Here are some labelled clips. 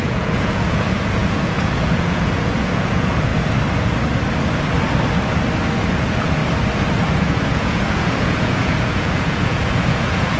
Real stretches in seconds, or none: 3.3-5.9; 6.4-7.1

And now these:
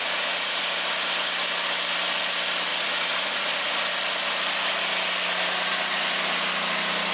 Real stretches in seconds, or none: 0.6-2.7; 3.7-7.1